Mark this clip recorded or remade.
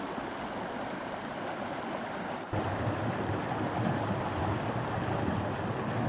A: recorded